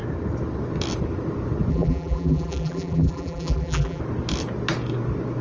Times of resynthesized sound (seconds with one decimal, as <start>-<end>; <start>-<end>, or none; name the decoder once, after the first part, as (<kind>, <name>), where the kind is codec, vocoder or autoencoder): 1.7-4.0 (vocoder, BigVGAN v2)